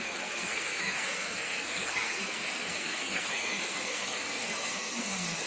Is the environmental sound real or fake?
fake